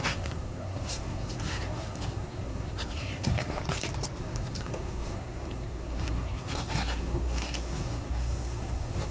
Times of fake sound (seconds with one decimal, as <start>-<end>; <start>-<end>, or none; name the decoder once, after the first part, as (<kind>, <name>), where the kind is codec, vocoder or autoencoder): 0.0-3.6 (codec, SNAC); 4.2-9.1